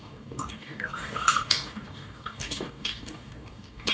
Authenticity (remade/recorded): remade